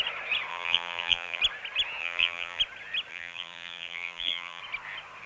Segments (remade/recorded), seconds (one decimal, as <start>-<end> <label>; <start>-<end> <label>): 0.0-0.5 recorded; 0.5-1.4 remade; 1.4-2.0 recorded; 2.0-2.6 remade; 2.6-3.1 recorded; 3.1-4.6 remade; 4.6-5.3 recorded